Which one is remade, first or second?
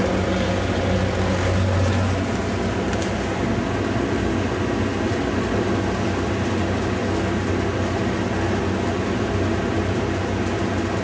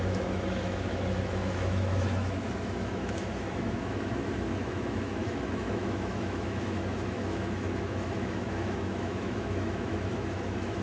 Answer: second